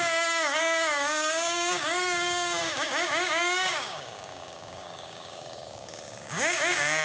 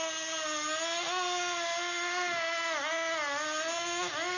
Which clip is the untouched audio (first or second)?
second